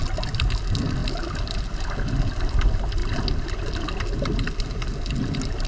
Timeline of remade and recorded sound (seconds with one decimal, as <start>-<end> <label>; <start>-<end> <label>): 0.0-5.7 recorded